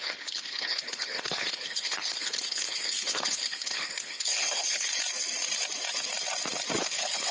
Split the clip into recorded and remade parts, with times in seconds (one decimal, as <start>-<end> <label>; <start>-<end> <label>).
0.0-4.9 remade; 4.9-6.8 recorded; 6.8-7.3 remade